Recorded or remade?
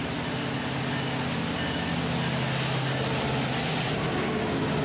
recorded